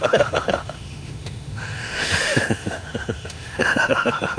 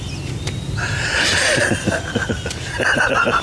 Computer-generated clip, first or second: first